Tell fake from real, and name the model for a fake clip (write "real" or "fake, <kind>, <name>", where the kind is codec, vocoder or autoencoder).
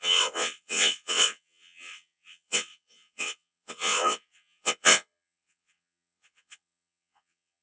fake, vocoder, WaveNeXt